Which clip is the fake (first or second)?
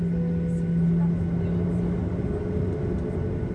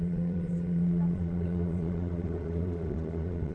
second